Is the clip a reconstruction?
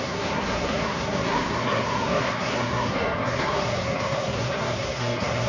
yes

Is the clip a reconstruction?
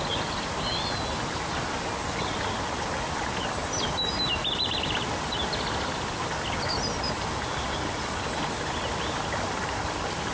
no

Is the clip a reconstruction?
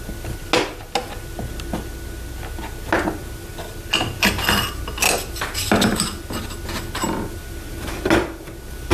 no